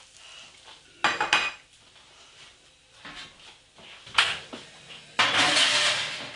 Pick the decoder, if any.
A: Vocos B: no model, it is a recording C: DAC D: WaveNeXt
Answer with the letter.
B